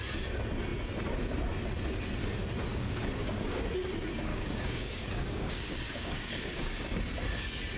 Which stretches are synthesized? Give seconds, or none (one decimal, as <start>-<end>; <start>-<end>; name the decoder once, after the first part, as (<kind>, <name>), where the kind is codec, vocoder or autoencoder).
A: 2.7-3.6 (codec, DAC); 4.3-7.0